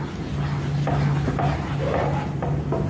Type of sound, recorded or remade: recorded